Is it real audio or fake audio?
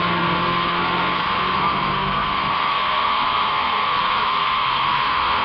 fake